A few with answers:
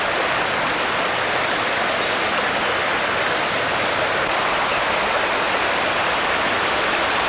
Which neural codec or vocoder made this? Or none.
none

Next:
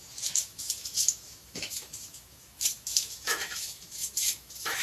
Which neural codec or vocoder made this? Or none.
autoencoder, DAC-VAE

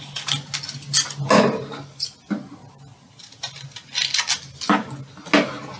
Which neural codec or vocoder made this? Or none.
none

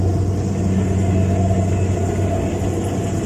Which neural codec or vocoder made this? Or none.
none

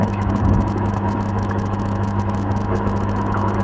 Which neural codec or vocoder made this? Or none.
autoencoder, DAC-VAE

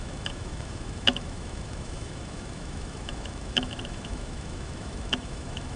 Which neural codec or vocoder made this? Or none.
autoencoder, DAC-VAE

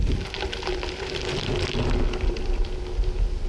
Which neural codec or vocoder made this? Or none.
none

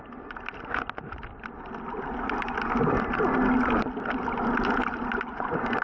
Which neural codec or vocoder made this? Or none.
none